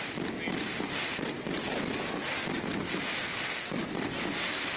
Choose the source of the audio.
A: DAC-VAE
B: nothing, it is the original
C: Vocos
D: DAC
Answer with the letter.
B